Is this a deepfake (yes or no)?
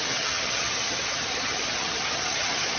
yes